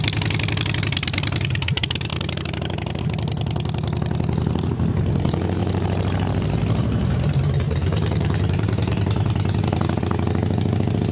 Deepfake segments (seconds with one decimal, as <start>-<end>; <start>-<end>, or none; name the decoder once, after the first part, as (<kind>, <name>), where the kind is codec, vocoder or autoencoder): 2.1-3.0 (vocoder, BigVGAN v2); 5.6-10.0